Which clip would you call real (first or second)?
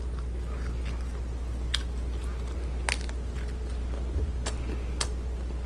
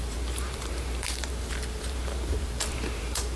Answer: first